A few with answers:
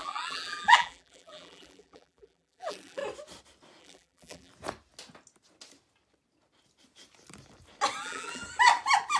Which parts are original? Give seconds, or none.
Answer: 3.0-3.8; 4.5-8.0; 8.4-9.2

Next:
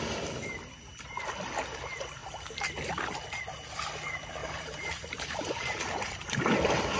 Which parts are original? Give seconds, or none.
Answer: 0.0-4.4; 6.4-7.0

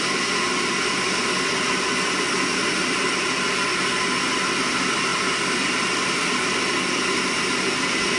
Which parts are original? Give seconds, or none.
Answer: 0.0-5.1; 6.6-8.2